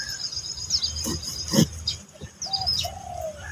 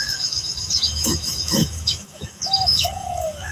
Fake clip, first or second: second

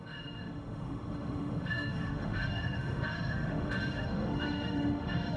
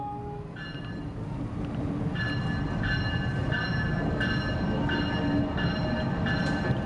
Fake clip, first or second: first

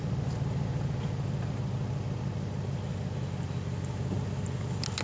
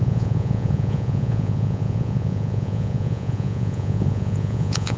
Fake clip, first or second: second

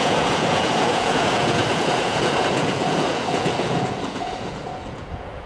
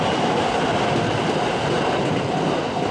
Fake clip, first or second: first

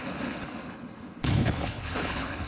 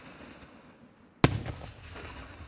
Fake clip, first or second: first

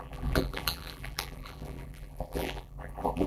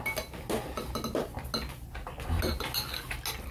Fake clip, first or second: first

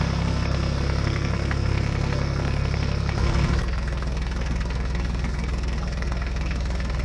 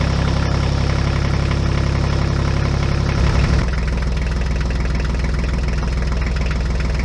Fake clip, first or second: first